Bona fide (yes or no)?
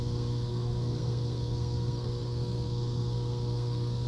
no